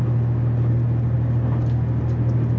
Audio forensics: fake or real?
real